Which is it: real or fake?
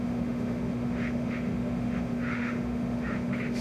fake